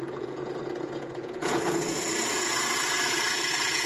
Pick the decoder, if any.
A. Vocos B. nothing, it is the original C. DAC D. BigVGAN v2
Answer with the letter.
A